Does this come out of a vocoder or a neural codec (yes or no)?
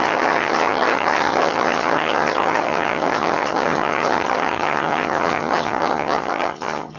yes